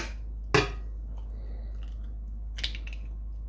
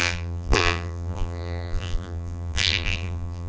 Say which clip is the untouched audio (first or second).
first